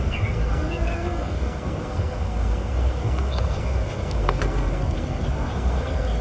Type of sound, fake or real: fake